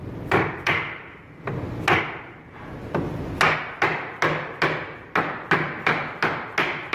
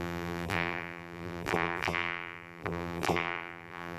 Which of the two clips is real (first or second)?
first